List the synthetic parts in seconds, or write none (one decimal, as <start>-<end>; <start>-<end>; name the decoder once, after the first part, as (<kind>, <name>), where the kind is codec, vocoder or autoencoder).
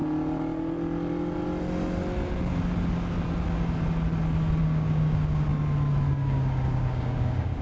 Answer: 4.6-5.5 (codec, DAC); 6.1-7.6